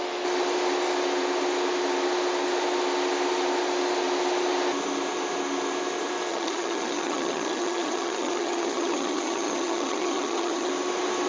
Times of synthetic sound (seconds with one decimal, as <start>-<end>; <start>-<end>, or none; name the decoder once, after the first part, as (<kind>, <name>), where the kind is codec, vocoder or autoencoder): 6.3-10.7 (vocoder, HiFi-GAN)